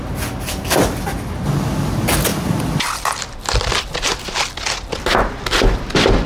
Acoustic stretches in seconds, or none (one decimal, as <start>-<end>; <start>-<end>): 0.0-2.3; 3.8-6.3